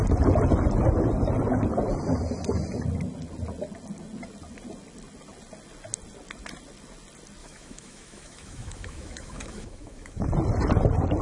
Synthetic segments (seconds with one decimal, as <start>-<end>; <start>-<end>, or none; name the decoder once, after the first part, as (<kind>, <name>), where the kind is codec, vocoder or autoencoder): 7.4-10.3 (autoencoder, DAC-VAE)